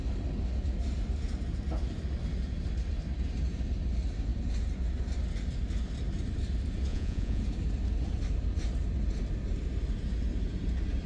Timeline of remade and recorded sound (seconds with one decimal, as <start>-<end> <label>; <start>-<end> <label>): 0.0-6.9 recorded; 6.9-7.4 remade; 7.4-11.1 recorded